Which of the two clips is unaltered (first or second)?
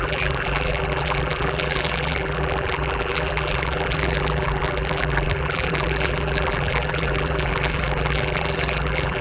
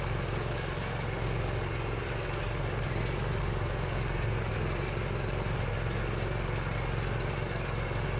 second